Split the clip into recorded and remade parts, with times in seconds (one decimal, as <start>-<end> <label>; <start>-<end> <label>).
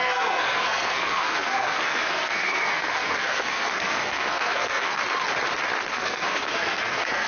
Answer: 0.0-5.0 remade; 5.0-5.9 recorded; 5.9-7.3 remade